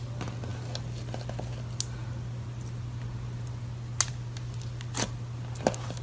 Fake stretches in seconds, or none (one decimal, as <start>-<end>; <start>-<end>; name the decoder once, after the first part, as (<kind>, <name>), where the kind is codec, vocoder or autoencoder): none